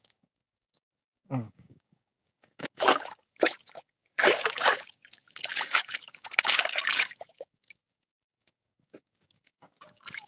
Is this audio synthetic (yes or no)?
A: yes